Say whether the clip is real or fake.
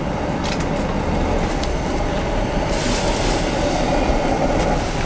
real